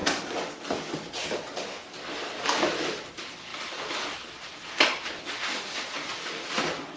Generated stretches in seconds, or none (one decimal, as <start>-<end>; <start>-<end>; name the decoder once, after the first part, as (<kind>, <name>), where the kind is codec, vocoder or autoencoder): 0.0-0.5 (vocoder, BigVGAN v2)